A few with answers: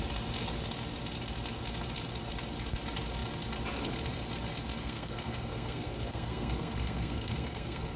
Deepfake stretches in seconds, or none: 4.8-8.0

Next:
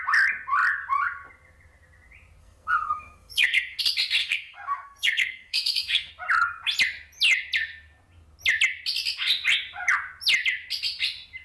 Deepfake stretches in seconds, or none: 2.4-3.8; 4.2-6.1

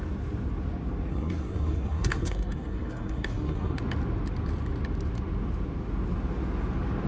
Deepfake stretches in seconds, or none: 1.1-3.8